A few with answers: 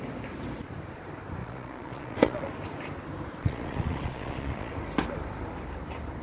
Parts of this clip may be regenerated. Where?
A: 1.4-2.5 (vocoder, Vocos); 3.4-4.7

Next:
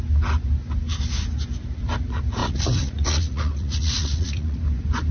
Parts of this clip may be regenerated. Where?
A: 2.4-4.6 (vocoder, Vocos)

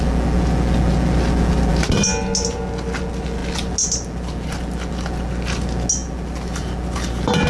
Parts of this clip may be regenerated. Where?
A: none

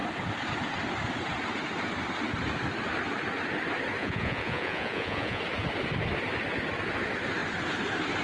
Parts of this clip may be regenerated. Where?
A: 4.0-5.4 (vocoder, Vocos)